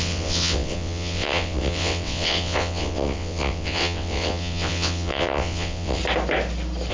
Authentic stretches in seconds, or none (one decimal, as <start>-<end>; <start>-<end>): 6.0-6.9